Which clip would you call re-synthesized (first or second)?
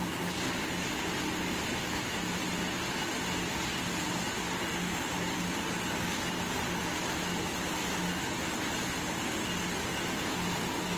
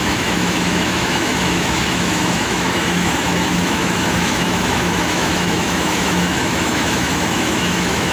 second